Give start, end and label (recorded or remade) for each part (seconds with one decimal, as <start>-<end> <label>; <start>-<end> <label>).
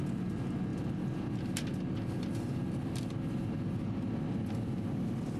0.0-5.4 recorded